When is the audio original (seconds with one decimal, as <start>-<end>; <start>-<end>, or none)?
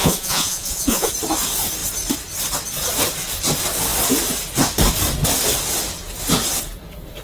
1.1-7.2